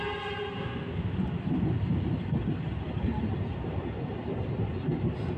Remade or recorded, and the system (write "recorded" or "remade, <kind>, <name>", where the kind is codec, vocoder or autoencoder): recorded